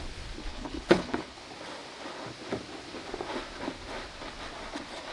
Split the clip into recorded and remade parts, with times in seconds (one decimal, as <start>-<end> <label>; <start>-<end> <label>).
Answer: 0.0-0.5 recorded; 0.5-1.4 remade; 1.4-5.1 recorded